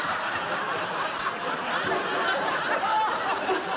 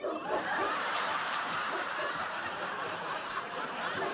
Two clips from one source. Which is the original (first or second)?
first